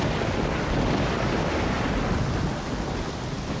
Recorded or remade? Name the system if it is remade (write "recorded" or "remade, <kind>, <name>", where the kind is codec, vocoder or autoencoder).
recorded